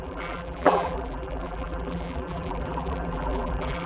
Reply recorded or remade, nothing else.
remade